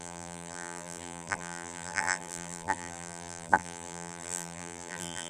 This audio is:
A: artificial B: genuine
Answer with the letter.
A